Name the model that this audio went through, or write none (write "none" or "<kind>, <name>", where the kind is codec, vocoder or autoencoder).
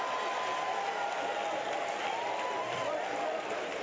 none